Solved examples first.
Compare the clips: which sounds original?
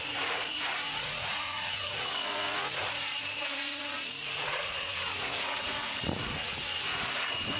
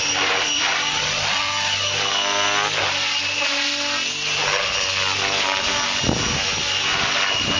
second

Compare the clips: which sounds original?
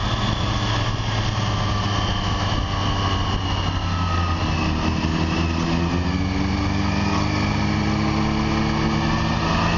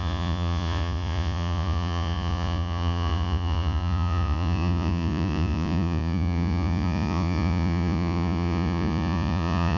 first